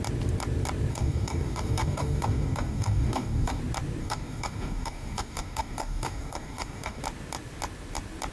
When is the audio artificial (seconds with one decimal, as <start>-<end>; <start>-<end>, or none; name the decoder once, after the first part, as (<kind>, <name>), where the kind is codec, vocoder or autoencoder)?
0.9-3.6 (codec, DAC); 4.0-7.0